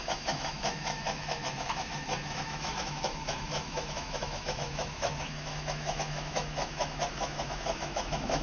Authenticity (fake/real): fake